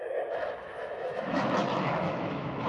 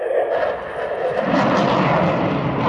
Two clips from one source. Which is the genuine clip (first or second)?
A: second